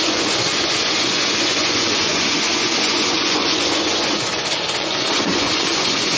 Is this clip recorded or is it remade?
remade